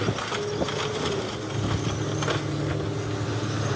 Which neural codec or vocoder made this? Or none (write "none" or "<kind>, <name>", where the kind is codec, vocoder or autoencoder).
none